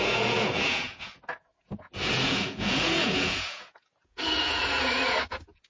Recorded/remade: remade